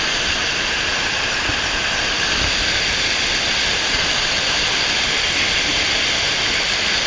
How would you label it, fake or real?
real